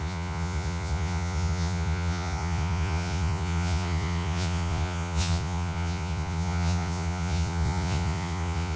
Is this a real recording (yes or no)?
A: no